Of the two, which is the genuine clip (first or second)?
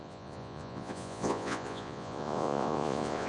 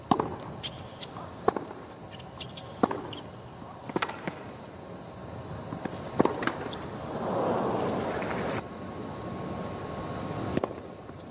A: second